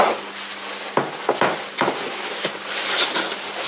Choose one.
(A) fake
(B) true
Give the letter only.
B